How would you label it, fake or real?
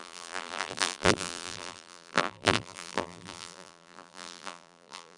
fake